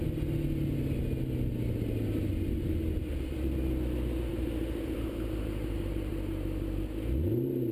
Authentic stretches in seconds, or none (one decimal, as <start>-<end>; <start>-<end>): 0.0-4.3; 6.1-7.7